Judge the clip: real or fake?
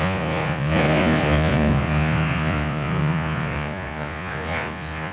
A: fake